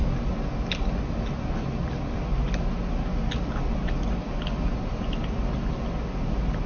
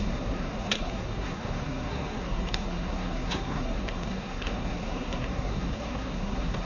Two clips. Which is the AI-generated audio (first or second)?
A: second